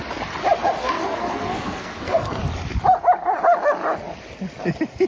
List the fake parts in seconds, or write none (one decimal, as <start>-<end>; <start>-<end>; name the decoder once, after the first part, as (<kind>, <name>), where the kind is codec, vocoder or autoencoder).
0.8-2.4 (codec, SNAC)